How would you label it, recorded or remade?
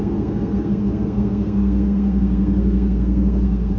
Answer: remade